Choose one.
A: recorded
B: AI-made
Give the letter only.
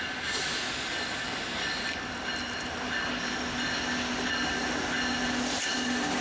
A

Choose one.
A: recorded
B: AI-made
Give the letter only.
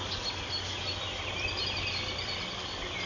A